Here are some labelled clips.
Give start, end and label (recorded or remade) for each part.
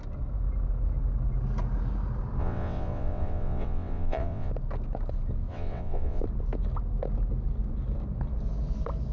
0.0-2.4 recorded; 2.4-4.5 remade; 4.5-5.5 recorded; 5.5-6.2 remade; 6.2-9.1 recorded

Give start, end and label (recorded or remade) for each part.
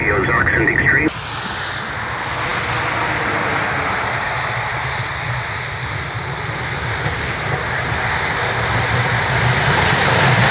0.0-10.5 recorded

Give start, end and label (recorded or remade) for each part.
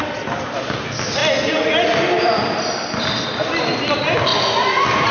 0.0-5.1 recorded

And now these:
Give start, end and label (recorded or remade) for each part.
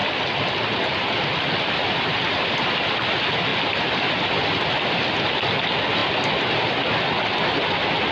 0.0-8.1 recorded